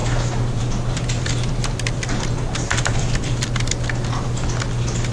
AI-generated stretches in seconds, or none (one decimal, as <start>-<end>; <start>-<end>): none